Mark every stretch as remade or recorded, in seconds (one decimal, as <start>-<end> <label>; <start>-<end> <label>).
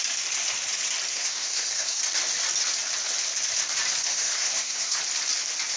0.0-1.1 recorded; 1.1-2.0 remade; 2.0-4.1 recorded; 4.1-5.0 remade; 5.0-5.8 recorded